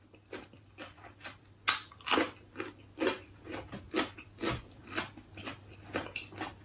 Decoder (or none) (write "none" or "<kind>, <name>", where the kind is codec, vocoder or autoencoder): none